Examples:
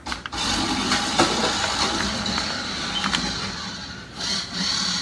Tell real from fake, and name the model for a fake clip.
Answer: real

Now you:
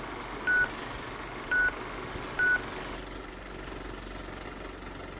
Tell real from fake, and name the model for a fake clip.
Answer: real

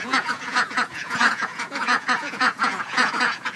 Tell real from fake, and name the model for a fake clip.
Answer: fake, vocoder, Vocos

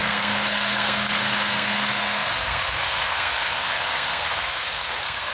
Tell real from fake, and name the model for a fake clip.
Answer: fake, codec, SNAC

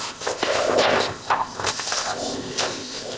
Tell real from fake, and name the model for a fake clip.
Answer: fake, codec, ZipCodec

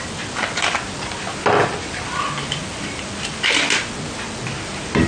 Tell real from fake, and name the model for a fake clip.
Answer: real